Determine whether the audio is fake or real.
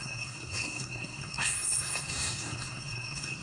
fake